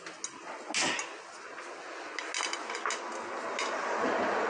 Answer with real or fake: real